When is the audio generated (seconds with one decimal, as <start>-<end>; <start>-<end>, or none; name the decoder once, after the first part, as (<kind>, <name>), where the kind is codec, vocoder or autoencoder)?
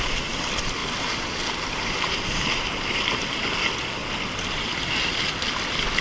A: none